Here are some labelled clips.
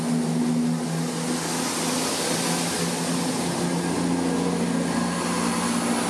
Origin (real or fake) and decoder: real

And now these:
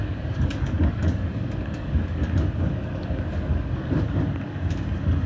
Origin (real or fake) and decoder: fake, codec, DAC